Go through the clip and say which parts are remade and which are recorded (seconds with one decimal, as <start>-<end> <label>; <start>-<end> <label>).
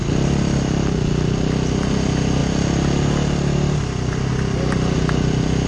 0.0-5.7 recorded